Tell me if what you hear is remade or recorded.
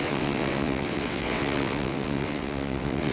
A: remade